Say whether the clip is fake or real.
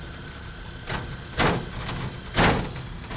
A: real